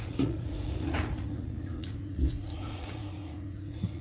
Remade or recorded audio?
remade